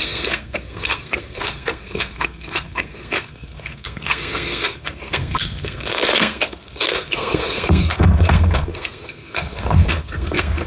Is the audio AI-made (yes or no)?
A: yes